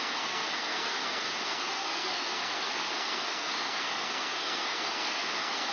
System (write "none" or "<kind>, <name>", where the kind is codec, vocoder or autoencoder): codec, SNAC